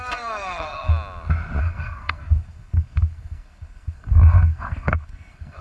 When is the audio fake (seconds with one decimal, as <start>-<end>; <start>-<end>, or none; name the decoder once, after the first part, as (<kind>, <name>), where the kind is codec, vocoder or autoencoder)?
0.0-0.9 (codec, SNAC); 1.6-5.6